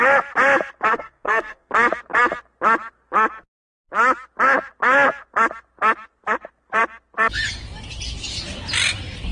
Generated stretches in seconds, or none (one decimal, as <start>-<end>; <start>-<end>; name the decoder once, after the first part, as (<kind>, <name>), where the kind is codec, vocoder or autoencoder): 0.9-1.7 (codec, SNAC)